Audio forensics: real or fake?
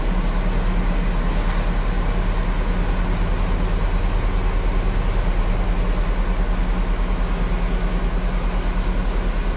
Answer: real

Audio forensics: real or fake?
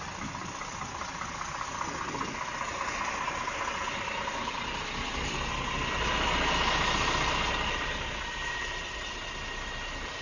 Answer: real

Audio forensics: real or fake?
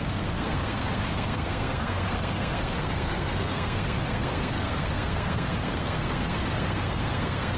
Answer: fake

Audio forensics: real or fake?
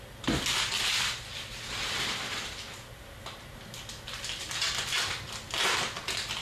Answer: real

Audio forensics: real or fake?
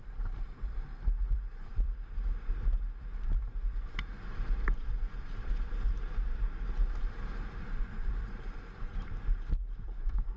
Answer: fake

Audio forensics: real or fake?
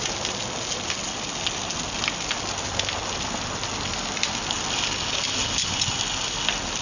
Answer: real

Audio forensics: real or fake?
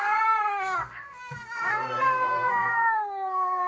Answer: fake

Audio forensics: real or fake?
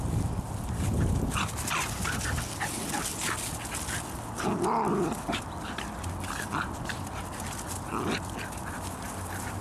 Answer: real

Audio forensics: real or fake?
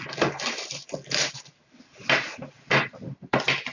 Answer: real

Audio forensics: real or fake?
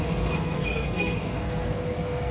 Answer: fake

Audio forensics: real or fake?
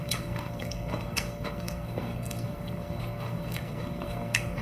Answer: fake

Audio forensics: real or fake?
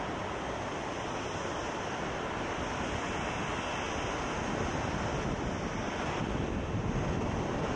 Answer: real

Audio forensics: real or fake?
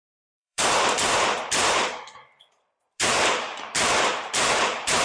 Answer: fake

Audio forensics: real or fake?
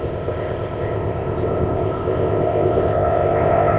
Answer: fake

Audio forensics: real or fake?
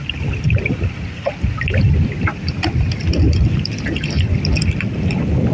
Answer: real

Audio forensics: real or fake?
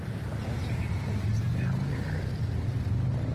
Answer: real